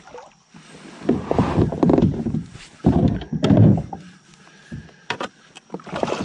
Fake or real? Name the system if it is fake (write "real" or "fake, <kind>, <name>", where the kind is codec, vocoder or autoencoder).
real